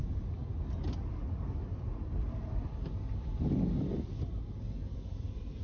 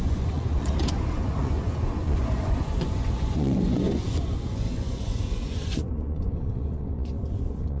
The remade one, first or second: second